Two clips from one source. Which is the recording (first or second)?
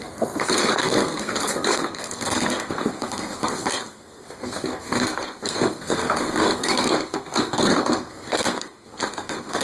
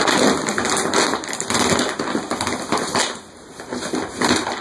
second